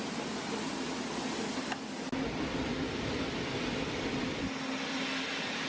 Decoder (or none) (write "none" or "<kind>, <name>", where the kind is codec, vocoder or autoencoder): none